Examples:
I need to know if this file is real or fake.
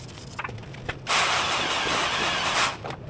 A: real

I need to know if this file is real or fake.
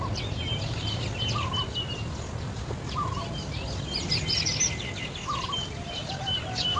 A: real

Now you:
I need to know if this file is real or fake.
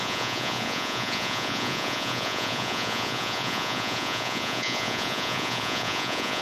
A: fake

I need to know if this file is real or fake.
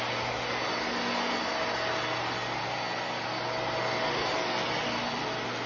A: real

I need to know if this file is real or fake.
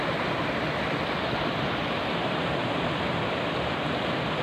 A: real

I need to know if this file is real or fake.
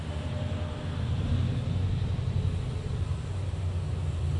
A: real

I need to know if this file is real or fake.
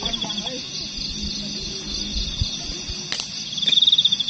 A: real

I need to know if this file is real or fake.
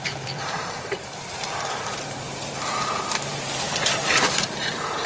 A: fake